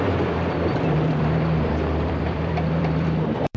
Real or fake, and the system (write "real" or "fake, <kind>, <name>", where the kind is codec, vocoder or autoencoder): fake, vocoder, BigVGAN v2